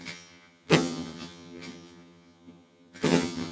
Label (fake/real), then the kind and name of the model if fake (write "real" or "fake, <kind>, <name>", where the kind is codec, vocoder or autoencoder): fake, vocoder, HiFi-GAN